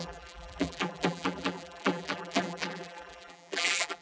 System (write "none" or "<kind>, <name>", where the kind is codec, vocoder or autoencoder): vocoder, BigVGAN v2